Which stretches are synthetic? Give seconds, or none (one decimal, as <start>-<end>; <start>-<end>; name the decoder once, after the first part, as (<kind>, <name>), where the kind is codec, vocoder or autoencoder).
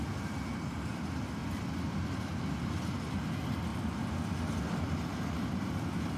none